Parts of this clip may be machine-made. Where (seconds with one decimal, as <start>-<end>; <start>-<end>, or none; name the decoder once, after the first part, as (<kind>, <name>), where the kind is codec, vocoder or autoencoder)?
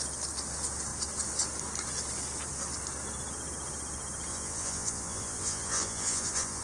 4.3-6.6 (vocoder, Vocos)